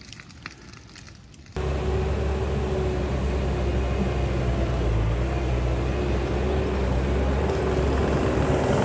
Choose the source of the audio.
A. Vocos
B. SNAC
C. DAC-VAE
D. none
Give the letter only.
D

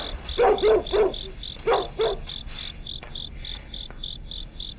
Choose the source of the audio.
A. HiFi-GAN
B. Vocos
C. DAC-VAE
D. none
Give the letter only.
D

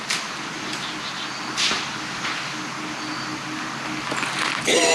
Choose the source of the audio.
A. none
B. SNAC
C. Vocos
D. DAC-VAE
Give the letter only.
A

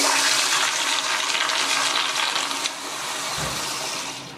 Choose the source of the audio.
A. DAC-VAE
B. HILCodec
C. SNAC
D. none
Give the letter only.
D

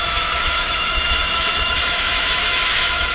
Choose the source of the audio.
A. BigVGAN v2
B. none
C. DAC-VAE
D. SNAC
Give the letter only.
C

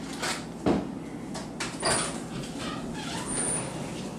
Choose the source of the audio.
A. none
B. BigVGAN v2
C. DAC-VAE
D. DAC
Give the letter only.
A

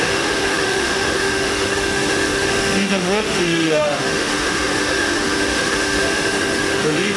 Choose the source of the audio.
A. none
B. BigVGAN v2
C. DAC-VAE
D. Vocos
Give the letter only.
C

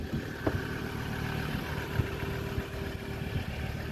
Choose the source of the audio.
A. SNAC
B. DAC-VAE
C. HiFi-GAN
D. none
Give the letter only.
D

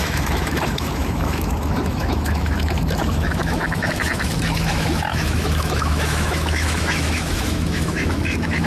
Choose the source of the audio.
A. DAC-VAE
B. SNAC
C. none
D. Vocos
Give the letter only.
A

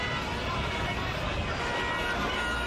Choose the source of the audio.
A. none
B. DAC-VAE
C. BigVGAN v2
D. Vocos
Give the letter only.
A